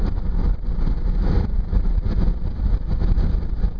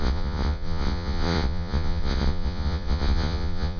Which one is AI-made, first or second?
second